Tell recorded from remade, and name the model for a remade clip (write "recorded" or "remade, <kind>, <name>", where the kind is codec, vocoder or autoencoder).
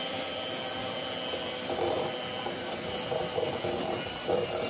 recorded